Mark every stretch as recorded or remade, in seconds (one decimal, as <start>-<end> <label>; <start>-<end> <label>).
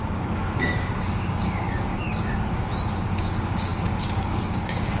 0.0-5.0 remade